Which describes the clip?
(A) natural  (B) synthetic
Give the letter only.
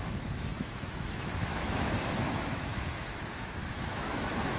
B